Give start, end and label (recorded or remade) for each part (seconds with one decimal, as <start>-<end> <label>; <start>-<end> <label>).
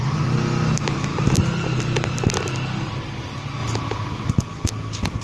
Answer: 0.0-5.2 recorded